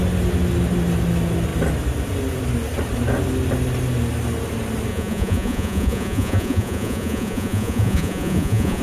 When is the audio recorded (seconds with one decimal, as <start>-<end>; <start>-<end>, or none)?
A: 0.0-4.9